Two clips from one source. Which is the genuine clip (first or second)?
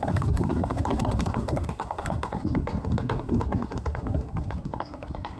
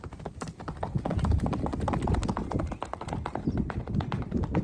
second